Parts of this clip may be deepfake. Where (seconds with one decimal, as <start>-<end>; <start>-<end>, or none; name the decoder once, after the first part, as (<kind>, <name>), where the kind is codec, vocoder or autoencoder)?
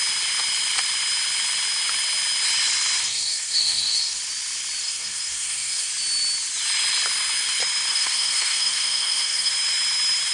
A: 3.0-4.2 (codec, SNAC); 4.8-5.9; 7.9-9.5